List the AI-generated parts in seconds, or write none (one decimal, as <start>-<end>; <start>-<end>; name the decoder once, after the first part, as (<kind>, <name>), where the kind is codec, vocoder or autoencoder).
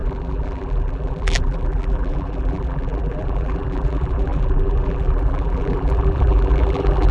0.0-7.1 (vocoder, BigVGAN v2)